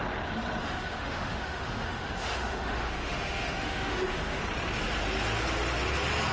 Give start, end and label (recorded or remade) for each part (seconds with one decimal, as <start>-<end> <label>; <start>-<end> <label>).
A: 0.0-0.6 recorded; 0.6-4.4 remade; 4.4-6.3 recorded